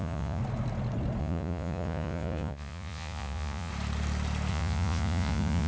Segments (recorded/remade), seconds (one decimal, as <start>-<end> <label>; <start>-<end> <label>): 0.0-0.4 remade; 0.4-1.2 recorded; 1.2-3.7 remade; 3.7-4.5 recorded; 4.5-5.7 remade